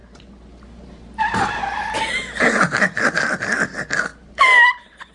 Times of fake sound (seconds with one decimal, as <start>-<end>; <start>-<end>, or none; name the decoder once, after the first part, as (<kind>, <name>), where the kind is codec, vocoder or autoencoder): 0.0-3.0 (vocoder, BigVGAN v2); 4.1-5.1